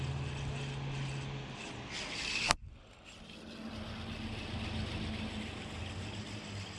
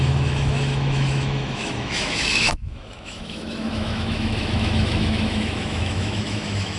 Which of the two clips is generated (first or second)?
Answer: second